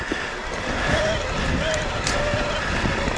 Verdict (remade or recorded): recorded